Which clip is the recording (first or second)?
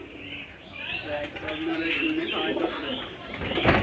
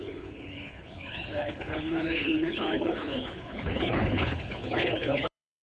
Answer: first